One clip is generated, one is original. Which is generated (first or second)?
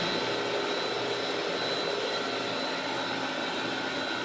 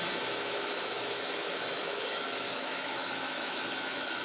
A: second